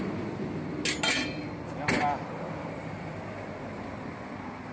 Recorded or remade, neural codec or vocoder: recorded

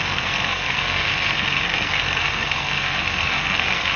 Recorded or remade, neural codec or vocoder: remade, codec, SNAC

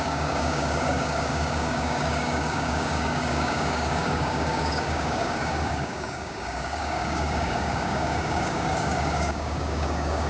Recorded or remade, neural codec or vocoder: remade, codec, DAC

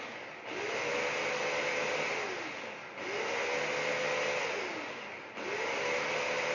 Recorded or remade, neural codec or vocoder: recorded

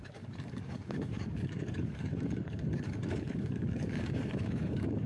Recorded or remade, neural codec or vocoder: remade, codec, DAC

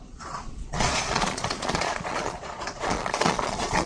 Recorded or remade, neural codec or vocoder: remade, vocoder, Vocos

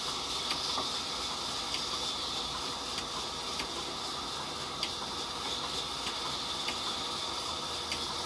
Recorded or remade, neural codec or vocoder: recorded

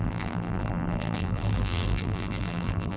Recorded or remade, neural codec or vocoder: remade, vocoder, BigVGAN v2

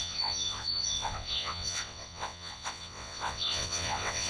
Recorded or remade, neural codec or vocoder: remade, vocoder, WaveNeXt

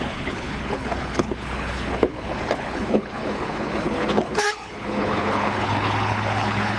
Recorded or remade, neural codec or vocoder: remade, codec, HILCodec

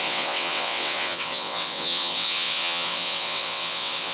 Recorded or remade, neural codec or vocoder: remade, vocoder, WaveNeXt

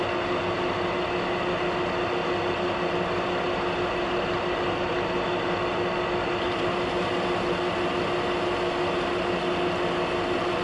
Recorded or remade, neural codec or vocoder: recorded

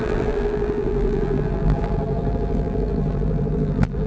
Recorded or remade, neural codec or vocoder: remade, vocoder, BigVGAN v2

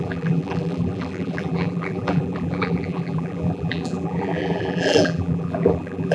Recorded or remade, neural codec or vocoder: remade, vocoder, BigVGAN v2